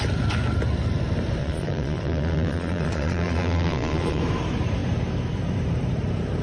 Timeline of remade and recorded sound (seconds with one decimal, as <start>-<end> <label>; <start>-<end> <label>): 0.0-1.4 recorded; 1.4-4.2 remade; 4.2-6.4 recorded